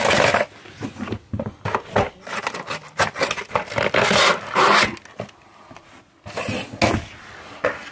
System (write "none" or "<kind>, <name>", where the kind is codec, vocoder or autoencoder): none